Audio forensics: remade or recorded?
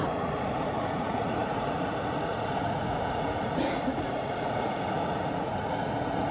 remade